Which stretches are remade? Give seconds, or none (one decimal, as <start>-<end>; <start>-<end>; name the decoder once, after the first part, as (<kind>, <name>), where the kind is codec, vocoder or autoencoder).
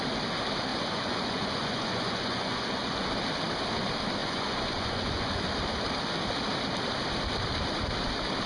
0.7-3.1 (vocoder, Vocos); 4.2-5.3